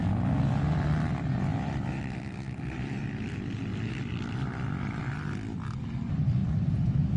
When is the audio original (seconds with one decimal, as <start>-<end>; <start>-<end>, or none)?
0.0-1.5; 2.2-3.7; 5.0-6.4